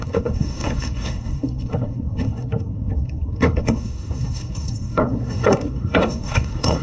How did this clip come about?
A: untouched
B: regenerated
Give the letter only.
B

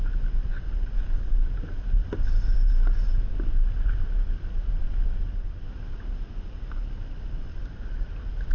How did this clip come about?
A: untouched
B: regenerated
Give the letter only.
A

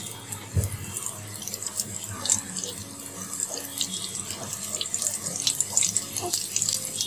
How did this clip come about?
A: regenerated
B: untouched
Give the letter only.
B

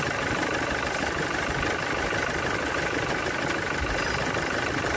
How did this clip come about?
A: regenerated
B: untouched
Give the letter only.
A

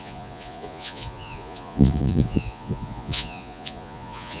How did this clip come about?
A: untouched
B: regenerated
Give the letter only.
B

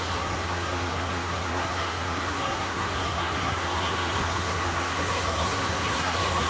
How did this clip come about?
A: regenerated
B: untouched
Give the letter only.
A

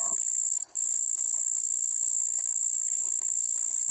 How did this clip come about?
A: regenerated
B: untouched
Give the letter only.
A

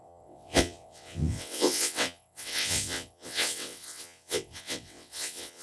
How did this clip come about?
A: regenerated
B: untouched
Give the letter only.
A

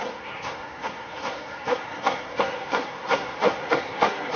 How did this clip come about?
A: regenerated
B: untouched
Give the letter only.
A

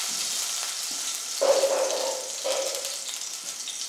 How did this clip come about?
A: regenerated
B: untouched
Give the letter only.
B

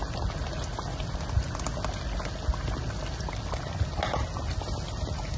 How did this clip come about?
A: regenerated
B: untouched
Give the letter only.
B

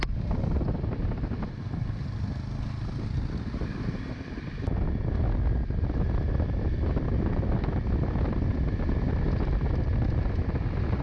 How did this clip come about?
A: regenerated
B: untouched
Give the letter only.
B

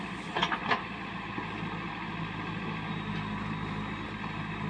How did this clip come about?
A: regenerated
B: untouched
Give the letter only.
B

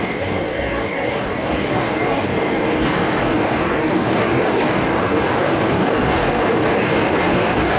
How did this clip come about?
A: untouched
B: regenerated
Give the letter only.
B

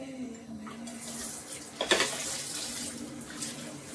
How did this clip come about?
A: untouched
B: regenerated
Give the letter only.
A